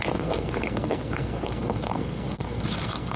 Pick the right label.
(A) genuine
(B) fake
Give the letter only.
B